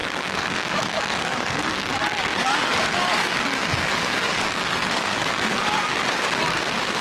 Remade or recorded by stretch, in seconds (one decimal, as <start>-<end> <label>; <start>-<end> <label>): 0.0-7.0 remade